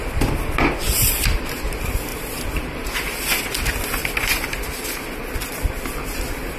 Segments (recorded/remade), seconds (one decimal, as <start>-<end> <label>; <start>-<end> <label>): 0.0-6.6 recorded